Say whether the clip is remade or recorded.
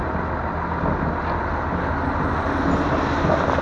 recorded